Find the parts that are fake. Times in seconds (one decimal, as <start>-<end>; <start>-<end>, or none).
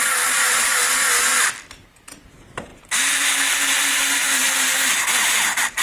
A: 0.0-0.8; 2.2-4.4; 5.2-5.8